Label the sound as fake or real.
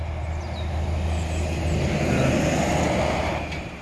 real